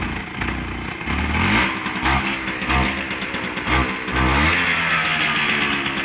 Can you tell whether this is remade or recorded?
recorded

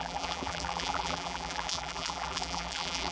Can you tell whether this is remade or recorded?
remade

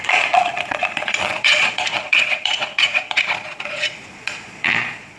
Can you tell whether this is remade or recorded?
remade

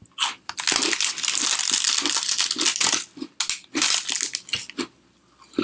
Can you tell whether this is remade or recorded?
recorded